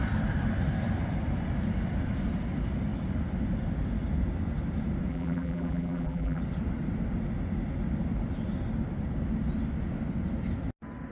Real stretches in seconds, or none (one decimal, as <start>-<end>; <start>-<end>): 0.0-5.1; 6.4-11.1